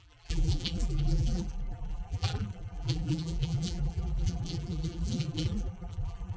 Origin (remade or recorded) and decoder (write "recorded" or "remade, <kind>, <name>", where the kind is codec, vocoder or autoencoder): remade, vocoder, BigVGAN v2